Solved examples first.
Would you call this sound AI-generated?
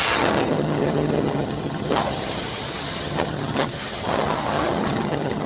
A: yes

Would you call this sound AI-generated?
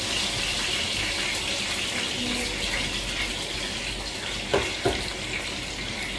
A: no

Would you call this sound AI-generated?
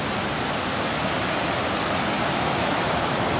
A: no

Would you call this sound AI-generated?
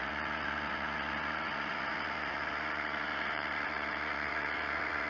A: yes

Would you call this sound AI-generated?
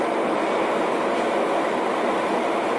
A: no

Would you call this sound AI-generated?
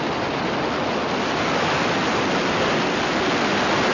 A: no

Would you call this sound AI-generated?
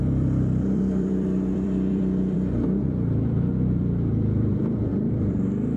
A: yes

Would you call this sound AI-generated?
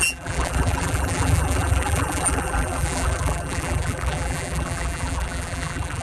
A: yes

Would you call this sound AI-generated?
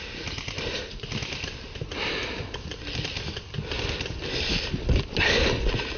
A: no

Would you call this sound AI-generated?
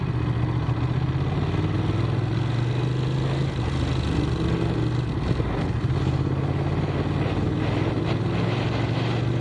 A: no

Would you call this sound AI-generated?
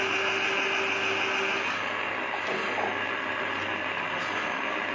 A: no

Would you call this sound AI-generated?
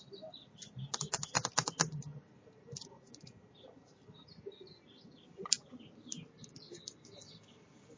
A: yes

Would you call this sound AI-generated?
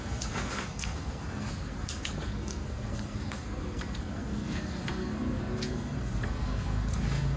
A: yes